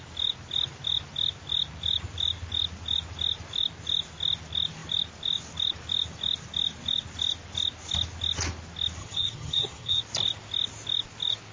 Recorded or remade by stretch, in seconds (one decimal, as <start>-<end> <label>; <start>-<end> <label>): 0.0-9.0 recorded; 9.0-10.0 remade; 10.0-11.5 recorded